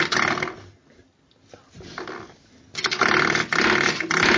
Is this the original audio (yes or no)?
yes